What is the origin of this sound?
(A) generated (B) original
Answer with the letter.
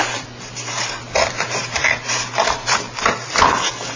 B